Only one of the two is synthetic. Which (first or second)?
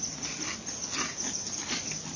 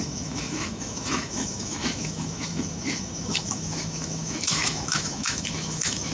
second